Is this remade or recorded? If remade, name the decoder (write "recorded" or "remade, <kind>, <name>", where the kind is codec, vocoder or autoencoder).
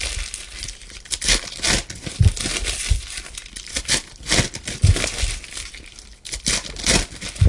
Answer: recorded